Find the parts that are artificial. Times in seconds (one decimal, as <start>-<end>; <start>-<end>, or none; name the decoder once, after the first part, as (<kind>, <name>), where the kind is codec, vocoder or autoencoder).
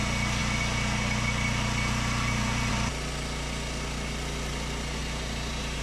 5.0-5.8 (vocoder, BigVGAN v2)